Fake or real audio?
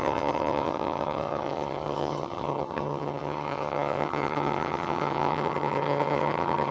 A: fake